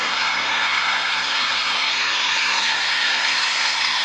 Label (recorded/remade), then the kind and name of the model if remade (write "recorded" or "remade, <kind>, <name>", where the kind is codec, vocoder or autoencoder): remade, codec, SNAC